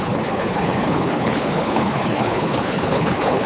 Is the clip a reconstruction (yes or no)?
yes